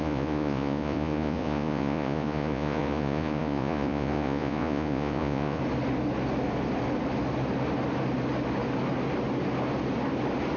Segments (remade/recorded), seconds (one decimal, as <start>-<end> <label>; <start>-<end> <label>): 0.0-5.6 remade; 5.6-10.6 recorded